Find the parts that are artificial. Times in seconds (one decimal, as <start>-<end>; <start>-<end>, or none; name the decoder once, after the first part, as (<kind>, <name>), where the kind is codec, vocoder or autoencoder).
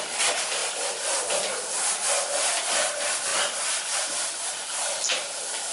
0.6-1.3 (vocoder, BigVGAN v2); 3.3-4.1